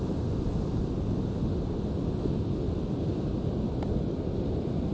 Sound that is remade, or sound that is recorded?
recorded